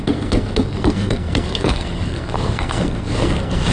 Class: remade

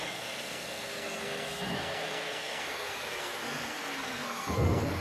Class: remade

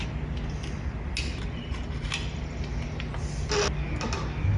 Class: recorded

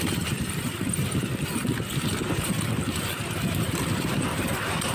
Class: remade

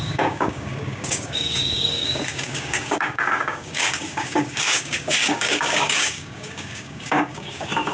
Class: remade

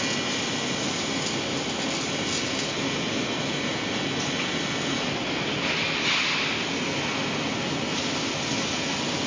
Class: recorded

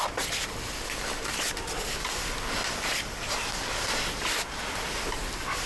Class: recorded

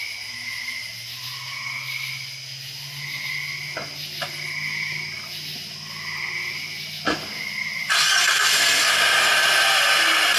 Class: recorded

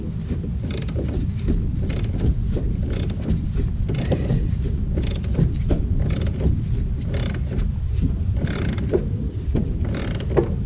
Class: recorded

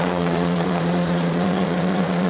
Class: remade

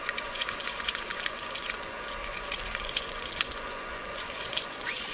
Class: remade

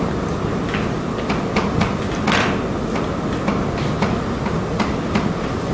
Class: recorded